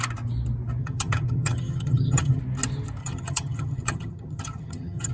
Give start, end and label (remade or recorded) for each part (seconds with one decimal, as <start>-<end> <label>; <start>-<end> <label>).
0.0-0.8 recorded; 0.8-2.4 remade; 2.4-3.0 recorded; 3.0-5.1 remade